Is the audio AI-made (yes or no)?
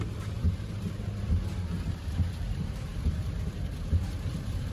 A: yes